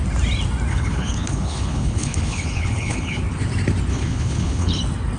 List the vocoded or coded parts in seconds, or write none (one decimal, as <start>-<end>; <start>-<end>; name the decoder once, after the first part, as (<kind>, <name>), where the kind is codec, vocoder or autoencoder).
0.7-3.2 (codec, HILCodec); 3.9-4.8